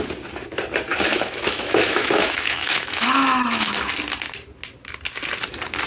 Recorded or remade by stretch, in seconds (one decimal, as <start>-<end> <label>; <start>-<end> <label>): 0.0-0.9 recorded; 0.9-3.9 remade; 3.9-5.9 recorded